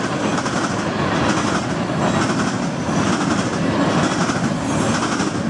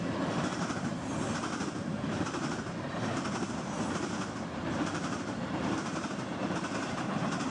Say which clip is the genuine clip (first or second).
first